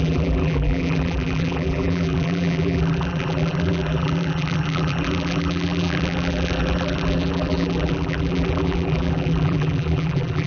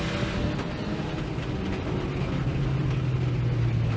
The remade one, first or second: first